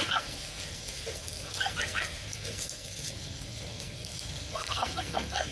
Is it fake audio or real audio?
fake